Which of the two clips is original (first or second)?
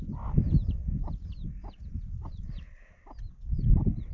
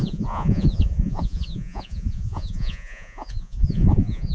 first